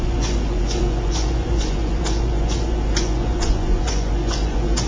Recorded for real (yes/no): no